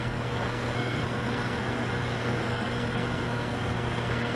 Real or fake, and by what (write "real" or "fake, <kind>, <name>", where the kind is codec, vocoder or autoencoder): fake, codec, SNAC